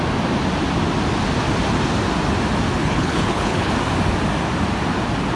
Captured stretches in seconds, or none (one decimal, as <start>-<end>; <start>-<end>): 0.0-2.8; 3.7-5.4